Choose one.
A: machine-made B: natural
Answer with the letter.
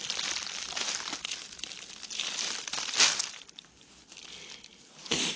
B